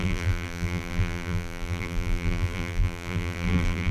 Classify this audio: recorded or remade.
remade